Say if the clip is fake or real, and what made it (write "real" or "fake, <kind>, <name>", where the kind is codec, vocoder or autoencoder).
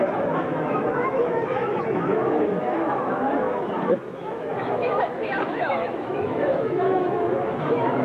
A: fake, autoencoder, DAC-VAE